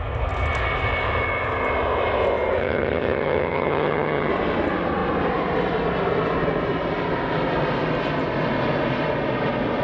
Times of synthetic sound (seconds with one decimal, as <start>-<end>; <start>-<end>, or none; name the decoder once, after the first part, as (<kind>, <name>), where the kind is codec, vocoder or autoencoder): 2.6-4.3 (vocoder, HiFi-GAN)